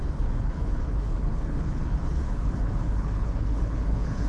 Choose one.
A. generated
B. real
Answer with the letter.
A